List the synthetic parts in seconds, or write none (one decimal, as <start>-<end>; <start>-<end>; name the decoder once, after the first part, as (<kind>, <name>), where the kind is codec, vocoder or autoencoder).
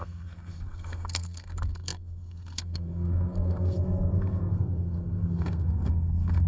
0.0-6.5 (codec, SNAC)